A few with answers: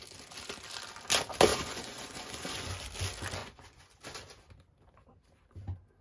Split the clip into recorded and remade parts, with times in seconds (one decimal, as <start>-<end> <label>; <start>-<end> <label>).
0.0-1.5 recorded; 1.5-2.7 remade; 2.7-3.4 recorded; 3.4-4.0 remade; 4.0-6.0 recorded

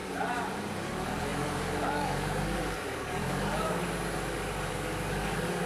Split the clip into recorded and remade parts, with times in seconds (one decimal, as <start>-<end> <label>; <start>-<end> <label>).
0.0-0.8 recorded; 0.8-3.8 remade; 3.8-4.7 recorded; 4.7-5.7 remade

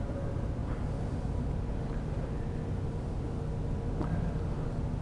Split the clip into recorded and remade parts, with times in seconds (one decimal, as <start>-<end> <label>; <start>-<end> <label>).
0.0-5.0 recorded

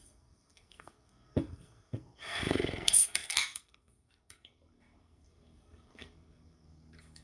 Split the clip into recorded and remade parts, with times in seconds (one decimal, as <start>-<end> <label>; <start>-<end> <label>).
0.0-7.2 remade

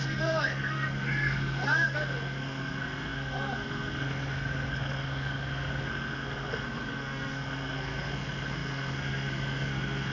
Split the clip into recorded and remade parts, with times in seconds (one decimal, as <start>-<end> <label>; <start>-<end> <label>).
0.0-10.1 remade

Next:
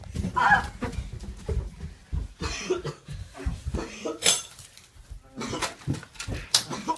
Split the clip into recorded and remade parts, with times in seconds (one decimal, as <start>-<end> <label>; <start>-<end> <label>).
0.0-4.0 recorded; 4.0-7.0 remade